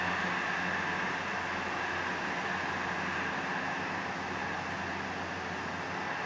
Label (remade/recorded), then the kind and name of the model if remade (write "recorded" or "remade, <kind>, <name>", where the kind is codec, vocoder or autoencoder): recorded